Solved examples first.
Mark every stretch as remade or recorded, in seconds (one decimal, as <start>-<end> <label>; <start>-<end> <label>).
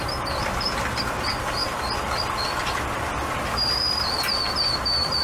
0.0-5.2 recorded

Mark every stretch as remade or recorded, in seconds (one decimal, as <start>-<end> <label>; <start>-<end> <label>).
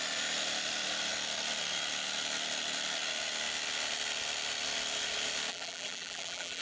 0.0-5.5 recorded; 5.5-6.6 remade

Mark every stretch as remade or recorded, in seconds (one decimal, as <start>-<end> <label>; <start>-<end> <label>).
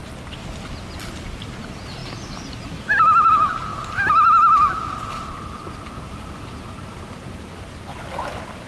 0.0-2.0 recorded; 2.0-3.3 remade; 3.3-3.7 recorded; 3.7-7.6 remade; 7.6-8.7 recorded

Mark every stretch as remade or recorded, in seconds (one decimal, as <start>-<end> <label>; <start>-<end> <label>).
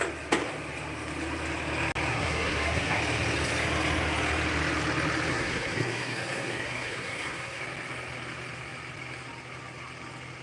0.0-2.1 recorded; 2.1-3.0 remade; 3.0-5.3 recorded; 5.3-7.6 remade; 7.6-10.4 recorded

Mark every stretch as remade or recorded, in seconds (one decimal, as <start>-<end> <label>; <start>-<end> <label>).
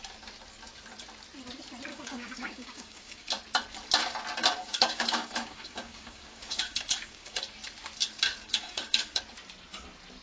0.0-1.9 recorded; 1.9-3.3 remade; 3.3-4.6 recorded; 4.6-7.4 remade; 7.4-8.4 recorded; 8.4-9.2 remade; 9.2-10.2 recorded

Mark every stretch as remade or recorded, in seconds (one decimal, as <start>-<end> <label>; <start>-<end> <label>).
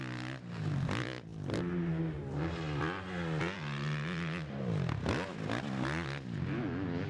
0.0-7.1 recorded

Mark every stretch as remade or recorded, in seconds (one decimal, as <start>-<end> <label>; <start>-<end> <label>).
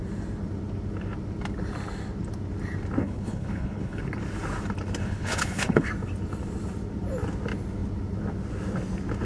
0.0-3.0 recorded; 3.0-4.0 remade; 4.0-5.0 recorded; 5.0-5.9 remade; 5.9-9.2 recorded